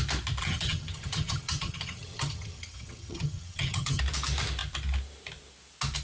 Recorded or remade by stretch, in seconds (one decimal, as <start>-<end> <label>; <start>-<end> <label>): 0.0-0.4 recorded; 0.4-4.0 remade; 4.0-6.0 recorded